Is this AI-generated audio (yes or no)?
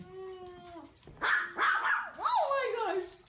no